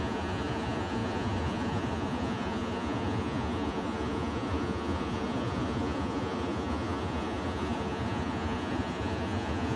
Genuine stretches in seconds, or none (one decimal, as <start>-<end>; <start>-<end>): none